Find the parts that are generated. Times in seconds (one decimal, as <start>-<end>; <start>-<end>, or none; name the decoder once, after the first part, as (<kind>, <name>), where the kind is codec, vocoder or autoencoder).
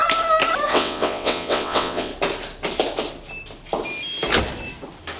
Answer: 0.7-2.1 (vocoder, WaveNeXt)